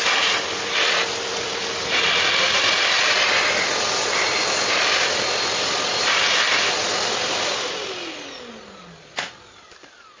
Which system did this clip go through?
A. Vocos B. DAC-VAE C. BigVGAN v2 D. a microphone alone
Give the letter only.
C